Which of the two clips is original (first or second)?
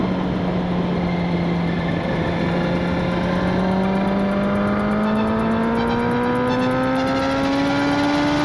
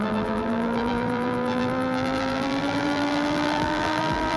first